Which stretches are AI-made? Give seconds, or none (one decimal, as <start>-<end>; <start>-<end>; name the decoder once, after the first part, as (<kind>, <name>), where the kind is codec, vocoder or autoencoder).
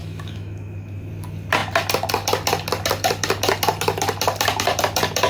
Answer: 0.0-1.1 (autoencoder, DAC-VAE)